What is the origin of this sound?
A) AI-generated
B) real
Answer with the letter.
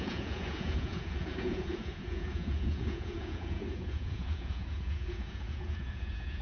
A